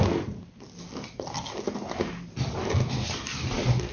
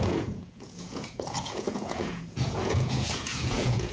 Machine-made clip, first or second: second